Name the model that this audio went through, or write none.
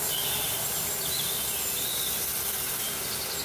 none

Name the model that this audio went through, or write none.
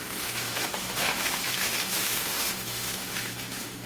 autoencoder, DAC-VAE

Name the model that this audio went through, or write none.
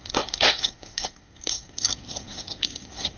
codec, SNAC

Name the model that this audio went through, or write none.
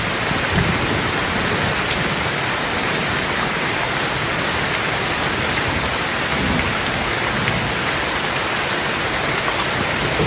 none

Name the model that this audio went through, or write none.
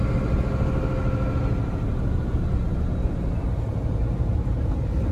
none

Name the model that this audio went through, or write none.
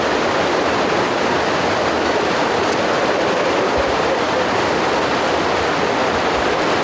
none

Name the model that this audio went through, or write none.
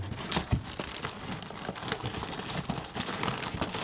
none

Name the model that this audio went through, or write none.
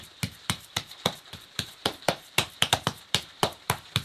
vocoder, BigVGAN v2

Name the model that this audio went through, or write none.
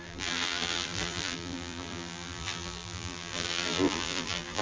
vocoder, BigVGAN v2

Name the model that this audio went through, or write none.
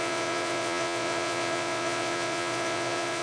vocoder, Vocos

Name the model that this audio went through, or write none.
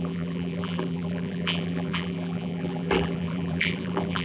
vocoder, BigVGAN v2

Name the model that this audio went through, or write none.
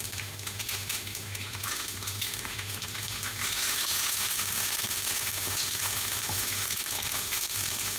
autoencoder, DAC-VAE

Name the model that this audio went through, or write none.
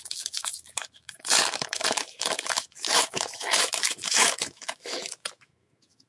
autoencoder, DAC-VAE